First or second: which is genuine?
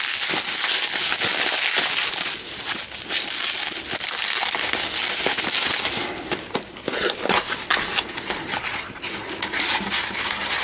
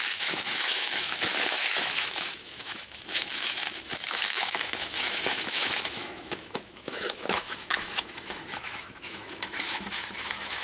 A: first